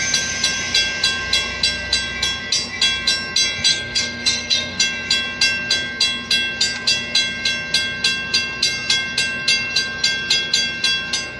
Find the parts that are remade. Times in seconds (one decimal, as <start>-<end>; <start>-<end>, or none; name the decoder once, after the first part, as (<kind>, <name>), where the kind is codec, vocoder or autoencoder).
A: 3.7-4.8 (codec, SNAC)